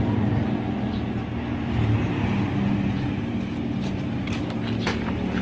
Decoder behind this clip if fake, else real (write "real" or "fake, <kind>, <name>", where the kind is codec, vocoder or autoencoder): real